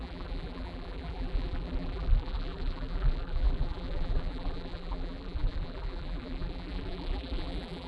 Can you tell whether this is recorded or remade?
remade